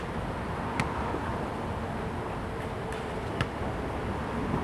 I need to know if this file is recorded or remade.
recorded